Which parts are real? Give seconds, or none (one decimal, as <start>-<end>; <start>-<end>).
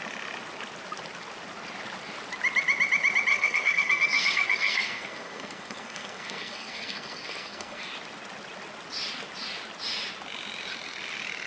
0.0-3.3; 7.8-11.5